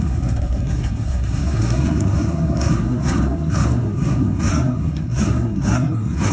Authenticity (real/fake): fake